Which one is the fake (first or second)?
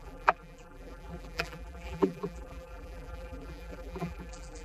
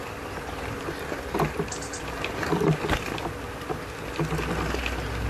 first